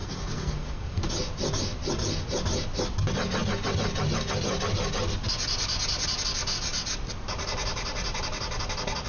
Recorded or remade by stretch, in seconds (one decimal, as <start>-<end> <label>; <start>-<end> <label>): 0.0-1.1 remade; 1.1-9.1 recorded